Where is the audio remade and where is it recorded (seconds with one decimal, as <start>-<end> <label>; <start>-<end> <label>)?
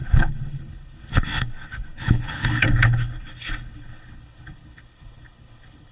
0.0-5.9 remade